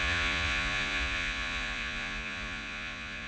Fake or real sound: fake